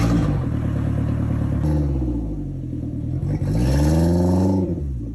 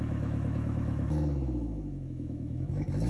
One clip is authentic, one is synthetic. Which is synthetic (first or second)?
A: second